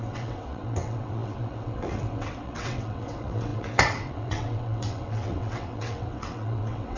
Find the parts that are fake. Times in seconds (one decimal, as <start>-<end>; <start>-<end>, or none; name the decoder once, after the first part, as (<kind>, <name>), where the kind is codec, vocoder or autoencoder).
0.0-7.0 (vocoder, WaveNeXt)